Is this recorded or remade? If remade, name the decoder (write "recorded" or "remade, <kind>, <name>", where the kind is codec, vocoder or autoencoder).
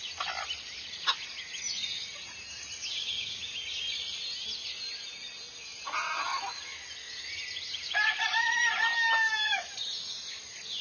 recorded